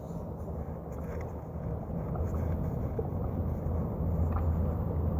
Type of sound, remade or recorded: recorded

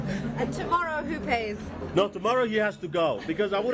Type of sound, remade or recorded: recorded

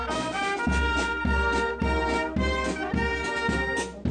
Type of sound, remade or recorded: recorded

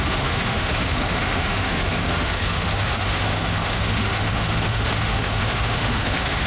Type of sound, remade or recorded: remade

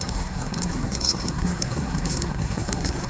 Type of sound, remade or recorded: remade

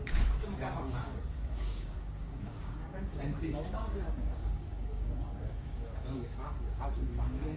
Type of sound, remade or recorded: remade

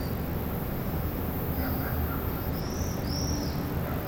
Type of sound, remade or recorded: recorded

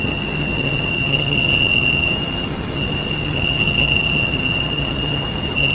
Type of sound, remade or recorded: remade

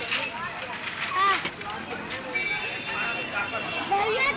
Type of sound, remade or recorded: recorded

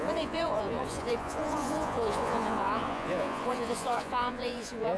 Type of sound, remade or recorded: remade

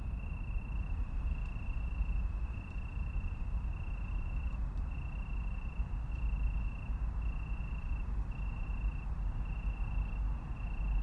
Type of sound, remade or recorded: recorded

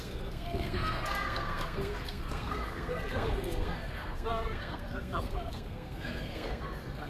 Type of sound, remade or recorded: remade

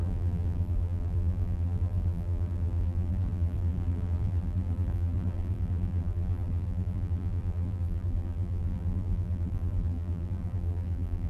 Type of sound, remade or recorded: remade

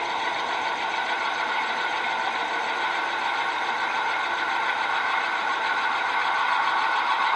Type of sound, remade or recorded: recorded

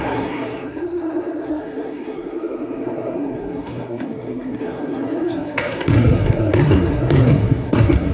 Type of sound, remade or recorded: remade